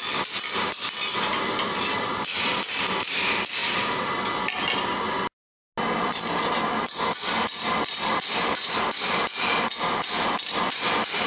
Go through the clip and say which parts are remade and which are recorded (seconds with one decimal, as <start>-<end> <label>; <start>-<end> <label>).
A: 0.0-11.3 recorded